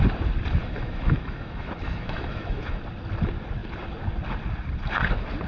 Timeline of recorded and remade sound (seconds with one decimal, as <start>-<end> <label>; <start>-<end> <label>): 0.0-0.6 recorded; 0.6-2.8 remade; 2.8-5.5 recorded